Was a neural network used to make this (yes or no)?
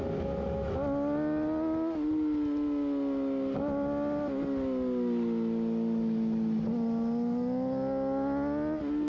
no